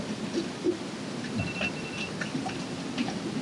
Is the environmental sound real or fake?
real